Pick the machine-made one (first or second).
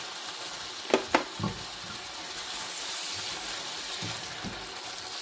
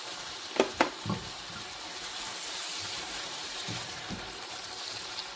second